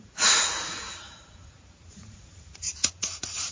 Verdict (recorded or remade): remade